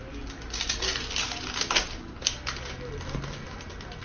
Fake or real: real